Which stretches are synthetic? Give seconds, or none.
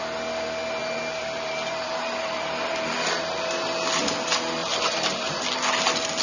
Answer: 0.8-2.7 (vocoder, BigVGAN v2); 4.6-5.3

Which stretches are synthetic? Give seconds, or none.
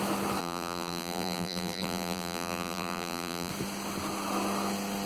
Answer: 0.4-3.5 (vocoder, BigVGAN v2)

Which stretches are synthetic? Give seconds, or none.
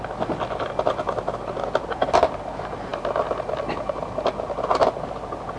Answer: none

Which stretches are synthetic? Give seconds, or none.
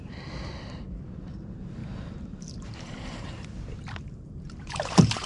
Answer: 1.8-5.3 (vocoder, BigVGAN v2)